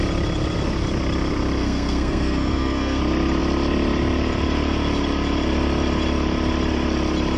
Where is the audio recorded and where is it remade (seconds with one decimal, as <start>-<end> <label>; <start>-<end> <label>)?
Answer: 0.0-1.6 recorded; 1.6-3.0 remade; 3.0-7.4 recorded